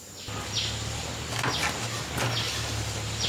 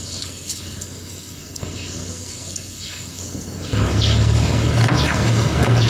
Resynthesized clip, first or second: second